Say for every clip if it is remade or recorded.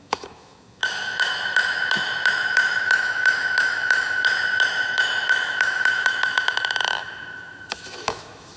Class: remade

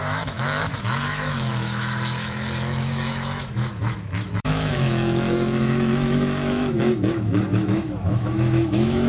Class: remade